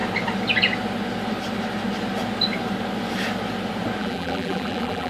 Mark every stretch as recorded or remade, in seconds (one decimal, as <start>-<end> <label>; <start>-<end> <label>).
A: 0.0-4.0 recorded; 4.0-5.1 remade